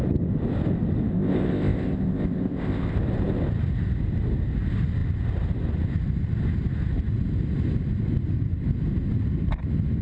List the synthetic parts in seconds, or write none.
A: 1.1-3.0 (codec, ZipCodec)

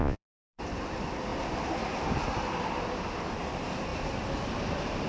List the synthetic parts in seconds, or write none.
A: 0.0-0.6 (vocoder, Vocos)

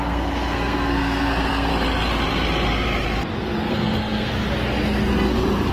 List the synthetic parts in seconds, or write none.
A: 0.0-1.7 (codec, SNAC); 3.7-4.3